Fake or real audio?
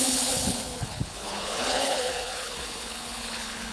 fake